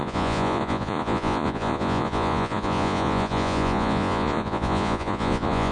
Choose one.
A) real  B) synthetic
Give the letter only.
B